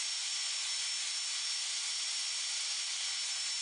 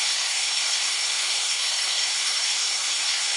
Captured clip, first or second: first